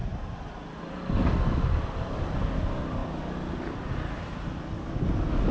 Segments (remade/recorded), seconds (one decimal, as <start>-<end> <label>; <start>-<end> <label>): 0.0-5.5 recorded